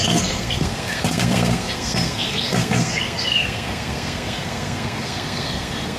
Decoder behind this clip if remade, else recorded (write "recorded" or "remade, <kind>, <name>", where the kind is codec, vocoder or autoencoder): remade, codec, SNAC